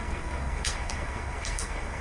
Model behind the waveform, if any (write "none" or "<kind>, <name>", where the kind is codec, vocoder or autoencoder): codec, SNAC